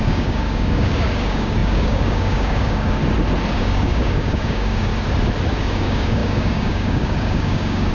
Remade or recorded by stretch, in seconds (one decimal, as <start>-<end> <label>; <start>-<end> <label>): 0.0-3.0 remade; 3.0-3.5 recorded; 3.5-4.9 remade; 4.9-5.6 recorded; 5.6-7.9 remade